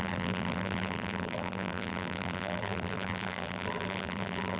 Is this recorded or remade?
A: remade